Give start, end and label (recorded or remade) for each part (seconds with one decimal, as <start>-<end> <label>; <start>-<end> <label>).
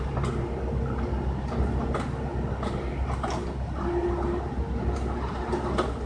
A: 0.0-2.3 recorded; 2.3-2.9 remade; 2.9-6.1 recorded